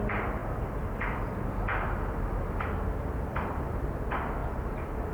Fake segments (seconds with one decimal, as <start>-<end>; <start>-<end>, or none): 3.3-3.9; 4.4-5.1